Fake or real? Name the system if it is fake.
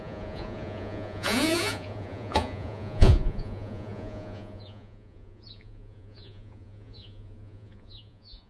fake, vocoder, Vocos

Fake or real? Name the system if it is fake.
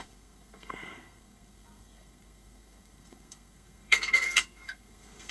fake, codec, SNAC